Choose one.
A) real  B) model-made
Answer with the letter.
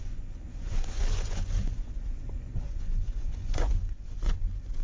B